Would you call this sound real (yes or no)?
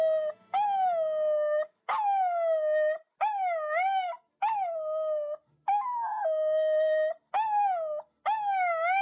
yes